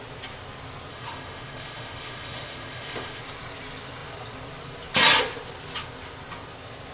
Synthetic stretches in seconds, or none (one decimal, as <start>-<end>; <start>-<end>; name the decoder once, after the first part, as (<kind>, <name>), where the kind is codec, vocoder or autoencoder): 0.9-3.2 (autoencoder, DAC-VAE)